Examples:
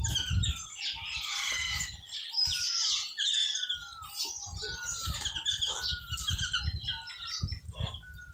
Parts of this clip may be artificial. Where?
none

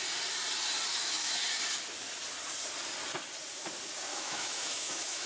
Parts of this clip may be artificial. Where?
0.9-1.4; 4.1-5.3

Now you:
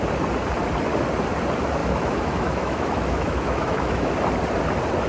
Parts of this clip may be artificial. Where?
1.8-4.1

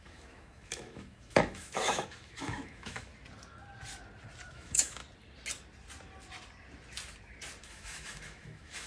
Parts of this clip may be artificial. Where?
0.0-3.1; 4.5-5.0; 7.6-8.9

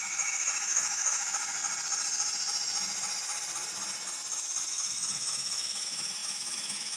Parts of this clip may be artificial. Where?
0.0-1.6; 4.7-7.0

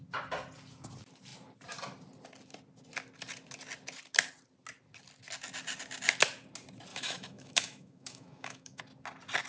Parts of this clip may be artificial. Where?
6.9-8.8